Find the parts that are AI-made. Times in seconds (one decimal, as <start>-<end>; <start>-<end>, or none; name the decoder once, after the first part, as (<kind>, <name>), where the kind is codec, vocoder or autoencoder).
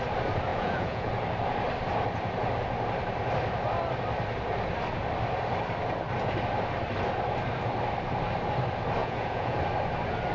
0.5-1.1 (vocoder, Vocos); 9.0-9.6